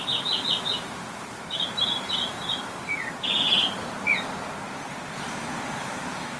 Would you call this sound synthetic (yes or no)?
no